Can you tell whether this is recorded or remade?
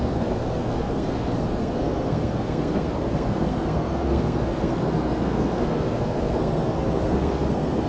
remade